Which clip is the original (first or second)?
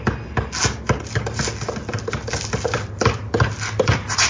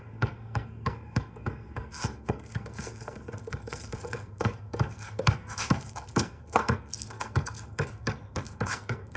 first